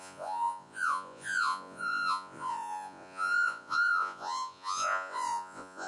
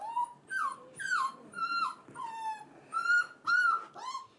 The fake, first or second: first